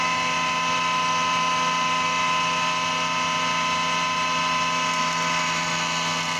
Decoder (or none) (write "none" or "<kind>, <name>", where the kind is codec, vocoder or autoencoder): none